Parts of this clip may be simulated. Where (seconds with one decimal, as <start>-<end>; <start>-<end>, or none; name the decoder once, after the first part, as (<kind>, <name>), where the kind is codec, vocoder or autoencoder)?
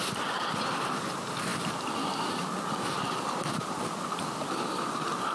none